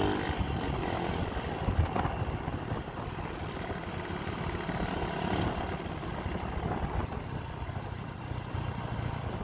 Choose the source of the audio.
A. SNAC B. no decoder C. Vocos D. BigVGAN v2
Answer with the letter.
B